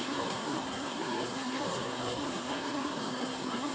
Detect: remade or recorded remade